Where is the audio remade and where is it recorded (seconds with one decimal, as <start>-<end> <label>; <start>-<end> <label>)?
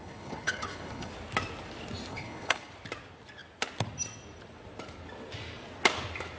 0.0-1.1 remade; 1.1-2.1 recorded; 2.1-2.7 remade; 2.7-6.4 recorded